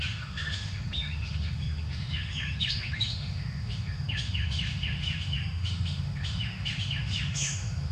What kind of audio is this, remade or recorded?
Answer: remade